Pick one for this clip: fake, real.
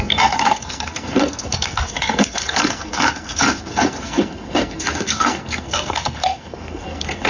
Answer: fake